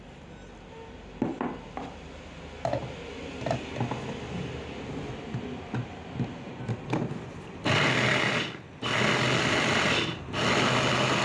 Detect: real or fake real